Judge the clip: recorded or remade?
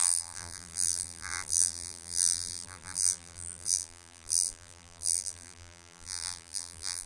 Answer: remade